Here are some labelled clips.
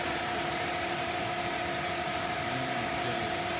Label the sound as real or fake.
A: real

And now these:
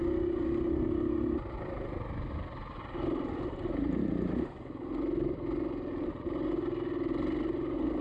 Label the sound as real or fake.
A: real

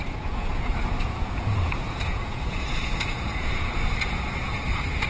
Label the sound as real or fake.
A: fake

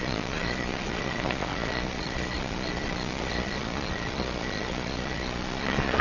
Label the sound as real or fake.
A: fake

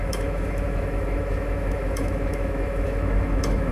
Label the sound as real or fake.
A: fake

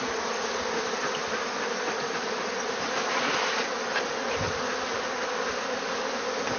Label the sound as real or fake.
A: real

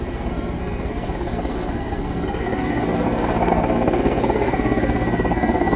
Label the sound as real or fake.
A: fake